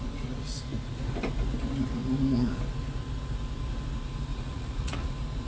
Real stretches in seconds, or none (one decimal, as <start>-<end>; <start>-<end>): 0.0-4.3; 5.1-5.5